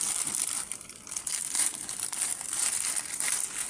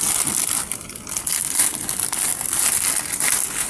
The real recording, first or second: second